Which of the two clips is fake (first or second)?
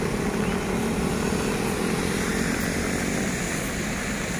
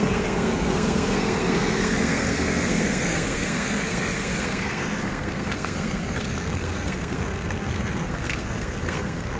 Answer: second